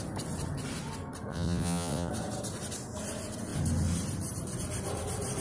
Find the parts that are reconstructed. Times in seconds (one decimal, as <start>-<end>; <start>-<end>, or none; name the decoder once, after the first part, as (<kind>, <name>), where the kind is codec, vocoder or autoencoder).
1.3-2.1 (vocoder, WaveNeXt)

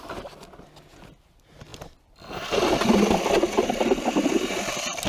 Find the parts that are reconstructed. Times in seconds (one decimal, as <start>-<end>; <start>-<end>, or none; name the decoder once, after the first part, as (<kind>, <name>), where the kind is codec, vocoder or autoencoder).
none